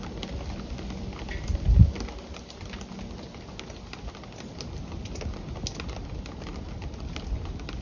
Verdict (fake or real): real